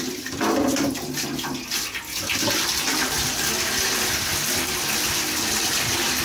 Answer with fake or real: real